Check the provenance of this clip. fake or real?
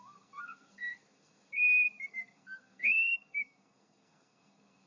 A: fake